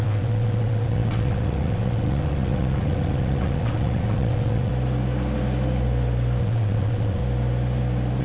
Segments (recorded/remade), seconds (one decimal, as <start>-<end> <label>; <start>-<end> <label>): 0.0-4.7 remade; 4.7-6.4 recorded; 6.4-7.2 remade; 7.2-8.2 recorded